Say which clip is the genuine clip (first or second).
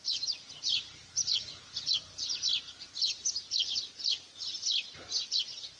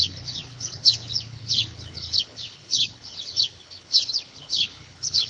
first